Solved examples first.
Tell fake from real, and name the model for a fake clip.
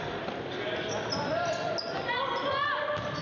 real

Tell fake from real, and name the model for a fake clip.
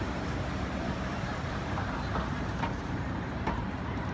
fake, vocoder, BigVGAN v2